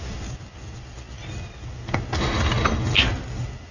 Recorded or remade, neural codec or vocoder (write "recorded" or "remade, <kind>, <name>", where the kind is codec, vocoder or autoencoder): recorded